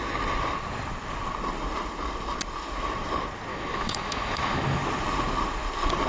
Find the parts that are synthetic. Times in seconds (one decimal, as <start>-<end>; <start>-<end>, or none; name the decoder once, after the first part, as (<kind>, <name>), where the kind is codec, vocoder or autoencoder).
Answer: 3.5-4.8 (autoencoder, DAC-VAE)